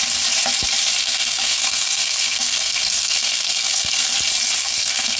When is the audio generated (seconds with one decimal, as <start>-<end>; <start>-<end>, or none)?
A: 1.0-4.1; 4.6-5.2